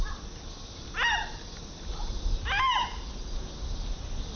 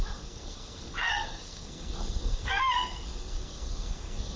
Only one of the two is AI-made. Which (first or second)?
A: second